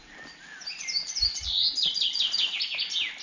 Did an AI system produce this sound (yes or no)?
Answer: no